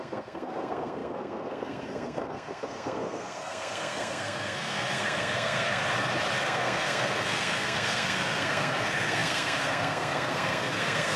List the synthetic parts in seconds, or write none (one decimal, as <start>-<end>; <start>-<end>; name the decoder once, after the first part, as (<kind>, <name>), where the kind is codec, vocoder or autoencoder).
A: 0.0-5.8 (codec, SNAC); 6.4-11.2